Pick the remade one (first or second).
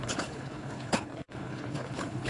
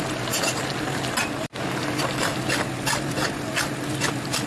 first